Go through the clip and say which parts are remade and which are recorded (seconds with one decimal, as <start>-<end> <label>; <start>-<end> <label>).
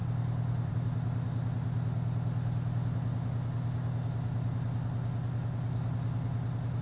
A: 0.0-6.8 recorded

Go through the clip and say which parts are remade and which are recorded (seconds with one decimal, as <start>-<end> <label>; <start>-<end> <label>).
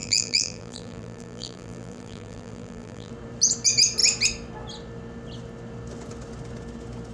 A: 0.0-3.1 remade; 3.1-7.1 recorded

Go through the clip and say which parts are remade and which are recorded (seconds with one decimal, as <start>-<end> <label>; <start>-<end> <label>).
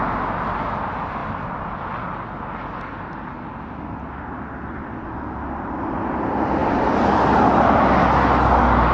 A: 0.0-8.9 recorded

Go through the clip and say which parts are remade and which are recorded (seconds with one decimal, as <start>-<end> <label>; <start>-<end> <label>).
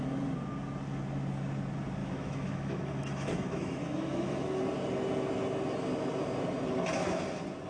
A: 0.0-2.0 recorded; 2.0-4.6 remade; 4.6-7.7 recorded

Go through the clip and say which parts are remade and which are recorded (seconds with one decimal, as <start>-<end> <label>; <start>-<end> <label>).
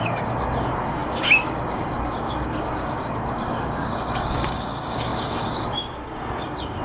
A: 0.0-6.8 remade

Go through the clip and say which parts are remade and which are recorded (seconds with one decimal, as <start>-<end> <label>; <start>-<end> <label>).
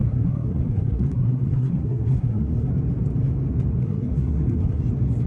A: 0.0-2.7 remade; 2.7-3.8 recorded; 3.8-4.8 remade; 4.8-5.3 recorded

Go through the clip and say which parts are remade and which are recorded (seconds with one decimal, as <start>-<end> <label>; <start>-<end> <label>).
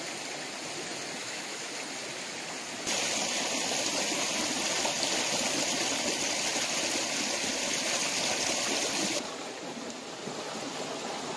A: 0.0-1.2 recorded; 1.2-1.7 remade; 1.7-11.4 recorded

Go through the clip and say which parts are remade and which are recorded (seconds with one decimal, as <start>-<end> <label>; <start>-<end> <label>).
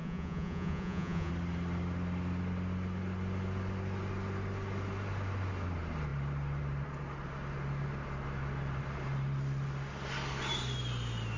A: 0.0-1.3 remade; 1.3-11.4 recorded